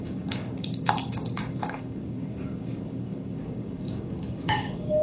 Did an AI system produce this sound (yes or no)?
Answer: yes